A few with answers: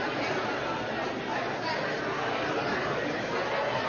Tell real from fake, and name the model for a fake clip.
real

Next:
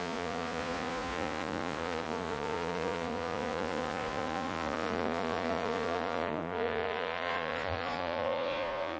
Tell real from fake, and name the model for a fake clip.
fake, vocoder, Vocos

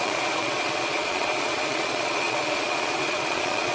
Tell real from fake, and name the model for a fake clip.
fake, vocoder, Vocos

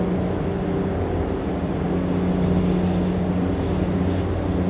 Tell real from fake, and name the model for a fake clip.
real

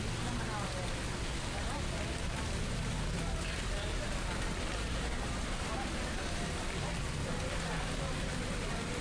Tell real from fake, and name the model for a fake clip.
real